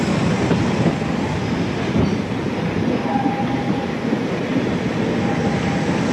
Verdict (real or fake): real